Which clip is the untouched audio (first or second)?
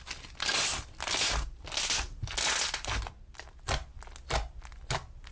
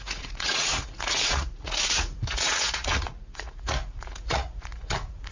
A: first